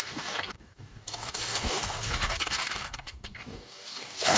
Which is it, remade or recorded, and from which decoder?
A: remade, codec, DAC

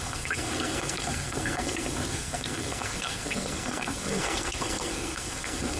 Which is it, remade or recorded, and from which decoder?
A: remade, codec, SNAC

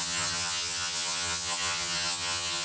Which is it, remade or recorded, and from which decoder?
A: remade, vocoder, HiFi-GAN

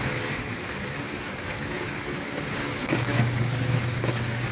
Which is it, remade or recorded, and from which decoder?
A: remade, codec, DAC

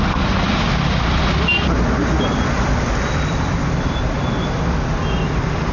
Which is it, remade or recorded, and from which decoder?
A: recorded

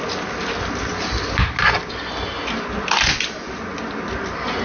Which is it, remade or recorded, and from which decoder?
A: recorded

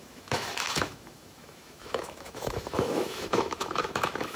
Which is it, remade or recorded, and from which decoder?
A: remade, autoencoder, DAC-VAE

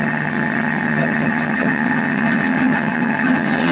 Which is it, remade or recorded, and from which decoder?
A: remade, vocoder, HiFi-GAN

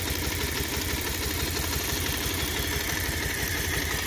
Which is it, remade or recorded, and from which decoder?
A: remade, vocoder, BigVGAN v2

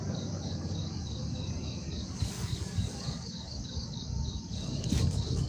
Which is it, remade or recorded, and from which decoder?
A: remade, codec, DAC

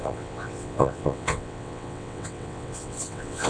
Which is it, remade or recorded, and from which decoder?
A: remade, vocoder, WaveNeXt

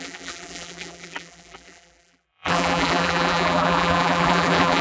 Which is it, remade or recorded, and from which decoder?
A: remade, vocoder, BigVGAN v2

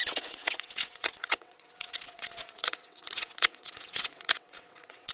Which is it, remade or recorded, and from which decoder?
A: remade, vocoder, WaveNeXt